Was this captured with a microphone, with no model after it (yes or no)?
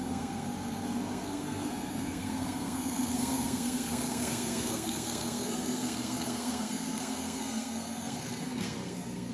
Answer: no